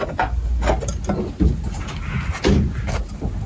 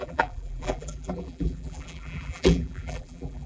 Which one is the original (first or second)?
first